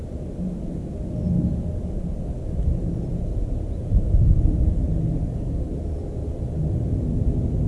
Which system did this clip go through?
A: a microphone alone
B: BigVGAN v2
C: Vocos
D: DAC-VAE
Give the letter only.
A